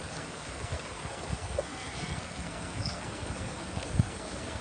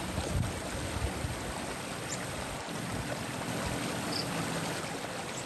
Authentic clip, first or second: second